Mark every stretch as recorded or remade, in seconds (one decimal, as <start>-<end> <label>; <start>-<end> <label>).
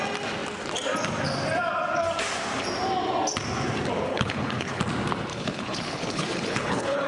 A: 0.0-4.1 recorded; 4.1-4.8 remade; 4.8-5.3 recorded; 5.3-7.1 remade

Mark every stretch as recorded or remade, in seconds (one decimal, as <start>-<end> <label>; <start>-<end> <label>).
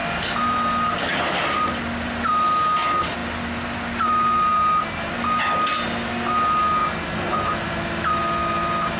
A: 0.0-9.0 recorded